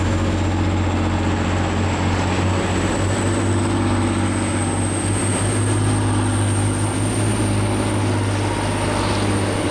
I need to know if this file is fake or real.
real